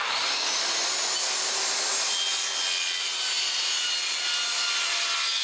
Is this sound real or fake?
real